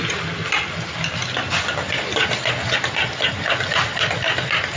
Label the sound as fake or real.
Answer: real